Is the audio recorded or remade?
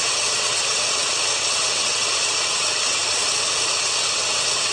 remade